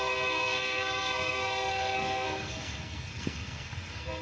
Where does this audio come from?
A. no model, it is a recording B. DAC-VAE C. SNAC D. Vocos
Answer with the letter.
C